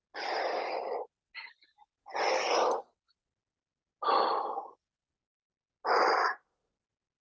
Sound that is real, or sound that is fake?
real